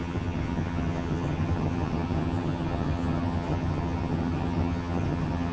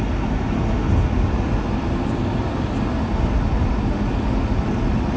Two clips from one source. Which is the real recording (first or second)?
second